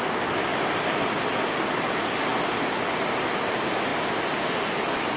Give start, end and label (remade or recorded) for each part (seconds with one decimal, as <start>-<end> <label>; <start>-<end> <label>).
0.0-5.2 recorded